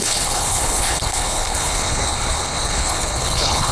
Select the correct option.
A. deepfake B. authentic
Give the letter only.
A